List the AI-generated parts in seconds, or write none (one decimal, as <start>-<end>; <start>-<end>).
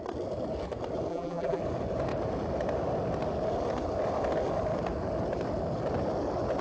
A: 1.1-1.6